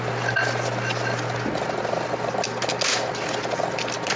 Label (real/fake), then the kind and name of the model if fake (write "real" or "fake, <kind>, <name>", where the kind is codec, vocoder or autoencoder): real